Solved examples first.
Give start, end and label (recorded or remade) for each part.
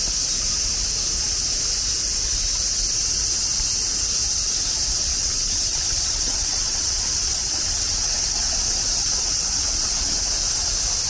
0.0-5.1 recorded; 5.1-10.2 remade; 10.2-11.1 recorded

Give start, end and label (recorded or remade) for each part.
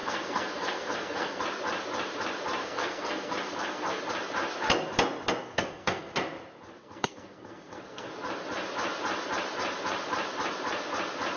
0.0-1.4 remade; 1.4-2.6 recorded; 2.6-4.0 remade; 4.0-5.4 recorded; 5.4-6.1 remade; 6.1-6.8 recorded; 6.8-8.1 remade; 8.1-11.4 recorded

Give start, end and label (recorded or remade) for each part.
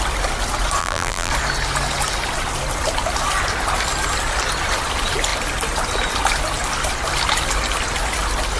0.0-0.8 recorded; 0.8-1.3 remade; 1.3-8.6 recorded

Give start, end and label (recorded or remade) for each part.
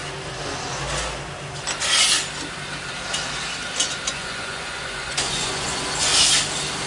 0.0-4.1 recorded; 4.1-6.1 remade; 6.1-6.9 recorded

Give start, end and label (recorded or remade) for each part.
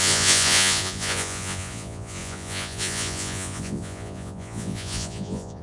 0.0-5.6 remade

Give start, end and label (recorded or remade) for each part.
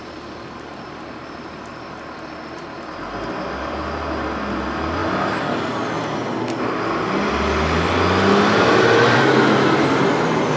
0.0-10.6 recorded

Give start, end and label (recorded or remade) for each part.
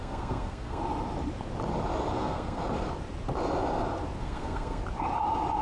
0.0-0.8 remade; 0.8-2.1 recorded; 2.1-2.6 remade; 2.6-4.2 recorded; 4.2-4.8 remade; 4.8-5.6 recorded